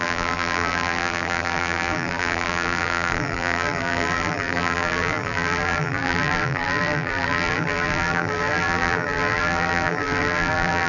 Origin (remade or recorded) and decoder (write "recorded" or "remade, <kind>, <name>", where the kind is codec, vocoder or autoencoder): remade, vocoder, BigVGAN v2